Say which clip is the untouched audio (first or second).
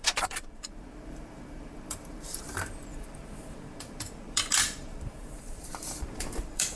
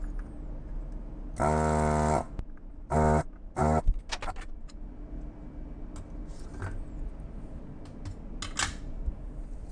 second